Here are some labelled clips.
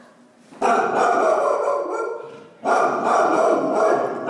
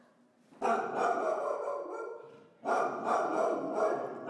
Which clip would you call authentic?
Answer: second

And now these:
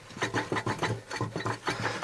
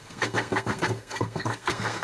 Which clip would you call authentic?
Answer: first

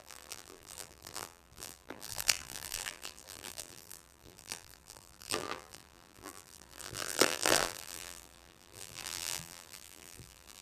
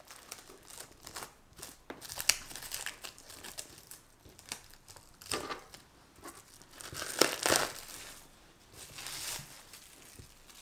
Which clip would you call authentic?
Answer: second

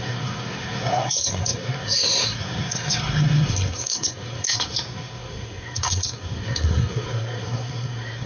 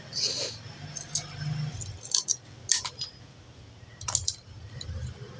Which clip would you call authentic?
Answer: second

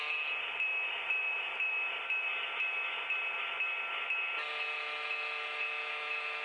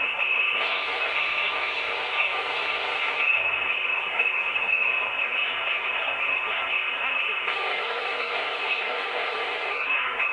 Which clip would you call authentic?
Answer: first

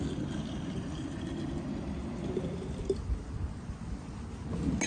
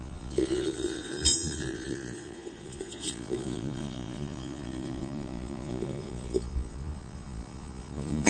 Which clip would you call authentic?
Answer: first